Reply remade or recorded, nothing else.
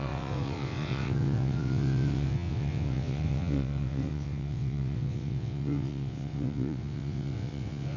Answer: remade